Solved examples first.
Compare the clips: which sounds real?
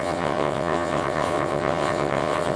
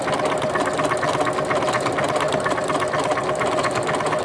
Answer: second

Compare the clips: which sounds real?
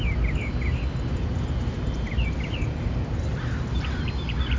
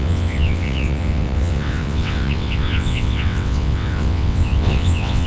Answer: first